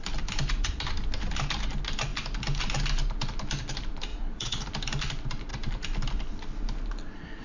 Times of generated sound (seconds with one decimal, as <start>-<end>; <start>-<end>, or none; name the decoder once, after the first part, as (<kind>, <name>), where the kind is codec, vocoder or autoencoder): 4.1-4.6 (vocoder, Vocos)